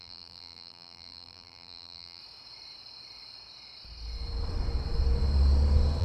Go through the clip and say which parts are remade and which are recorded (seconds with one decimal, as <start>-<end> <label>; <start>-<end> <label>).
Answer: 0.0-2.2 remade; 2.2-6.0 recorded